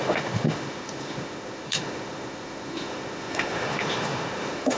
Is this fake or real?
fake